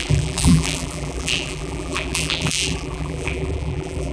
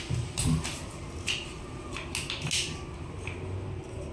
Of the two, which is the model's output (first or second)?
first